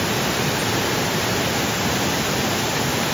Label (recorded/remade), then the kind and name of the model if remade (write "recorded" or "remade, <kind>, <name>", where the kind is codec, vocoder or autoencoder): recorded